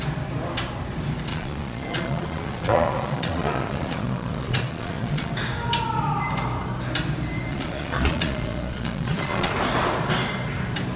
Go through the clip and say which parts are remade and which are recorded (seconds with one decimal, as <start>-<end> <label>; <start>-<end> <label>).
0.0-1.3 recorded; 1.3-5.3 remade; 5.3-7.5 recorded; 7.5-9.5 remade; 9.5-11.0 recorded